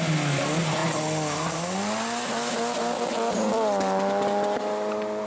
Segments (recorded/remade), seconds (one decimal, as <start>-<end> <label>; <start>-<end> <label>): 0.0-5.3 recorded